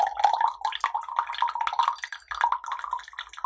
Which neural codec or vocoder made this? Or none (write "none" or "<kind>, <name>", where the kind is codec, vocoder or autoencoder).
none